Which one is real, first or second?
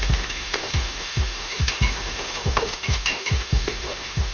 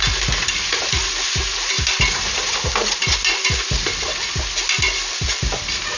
second